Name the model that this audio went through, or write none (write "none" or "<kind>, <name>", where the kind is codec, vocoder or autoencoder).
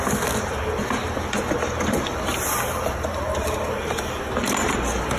none